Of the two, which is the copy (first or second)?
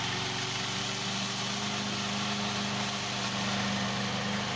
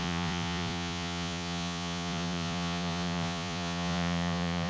second